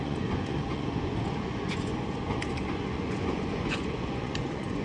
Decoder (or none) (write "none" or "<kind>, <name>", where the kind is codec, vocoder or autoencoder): vocoder, Vocos